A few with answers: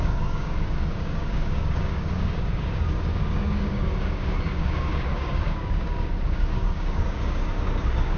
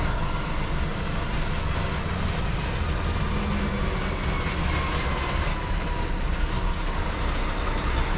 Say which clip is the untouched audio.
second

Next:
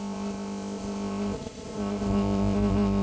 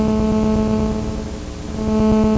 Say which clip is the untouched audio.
second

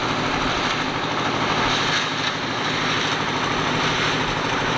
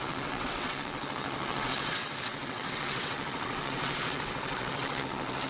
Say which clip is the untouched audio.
first